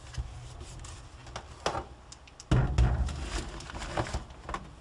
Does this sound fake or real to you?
real